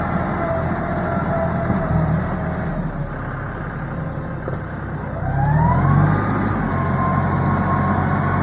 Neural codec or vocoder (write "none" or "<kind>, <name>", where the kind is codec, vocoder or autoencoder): none